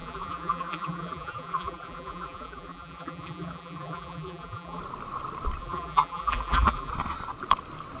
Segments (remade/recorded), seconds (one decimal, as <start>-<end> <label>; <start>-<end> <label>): 0.0-4.8 remade; 4.8-5.6 recorded; 5.6-6.9 remade; 6.9-8.0 recorded